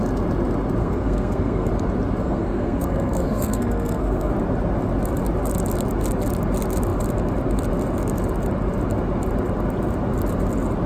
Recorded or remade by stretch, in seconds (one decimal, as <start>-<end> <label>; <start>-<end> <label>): 0.0-0.8 recorded; 0.8-1.7 remade; 1.7-2.2 recorded; 2.2-4.3 remade; 4.3-10.9 recorded